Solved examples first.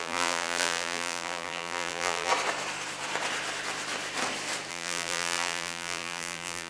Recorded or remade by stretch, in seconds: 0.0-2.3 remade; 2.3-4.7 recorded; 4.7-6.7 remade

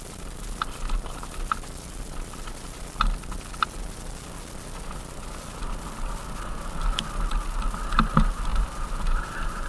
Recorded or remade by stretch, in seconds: 0.0-8.5 recorded; 8.5-9.7 remade